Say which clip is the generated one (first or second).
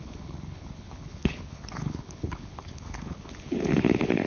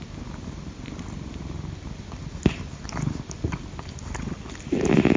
first